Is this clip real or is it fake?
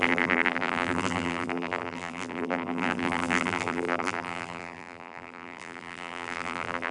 fake